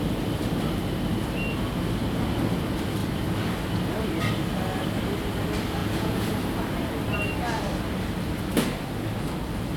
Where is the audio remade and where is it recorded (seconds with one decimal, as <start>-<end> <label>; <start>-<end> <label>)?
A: 0.0-5.8 recorded; 5.8-6.4 remade; 6.4-9.8 recorded